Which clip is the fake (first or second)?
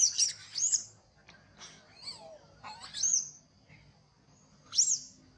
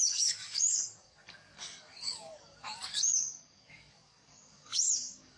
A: second